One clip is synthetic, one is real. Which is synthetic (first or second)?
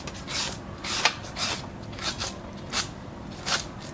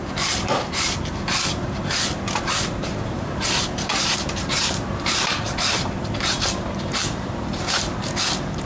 second